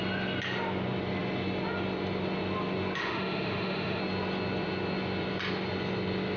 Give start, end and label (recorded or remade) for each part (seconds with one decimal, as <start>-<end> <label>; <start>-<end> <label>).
0.0-3.0 recorded; 3.0-4.0 remade; 4.0-6.4 recorded